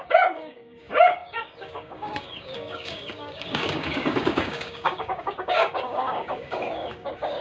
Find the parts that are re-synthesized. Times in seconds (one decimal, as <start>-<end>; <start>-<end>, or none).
0.0-7.4